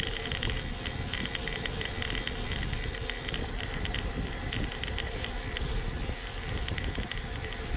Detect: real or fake real